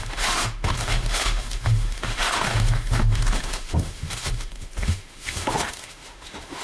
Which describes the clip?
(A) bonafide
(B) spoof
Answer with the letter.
B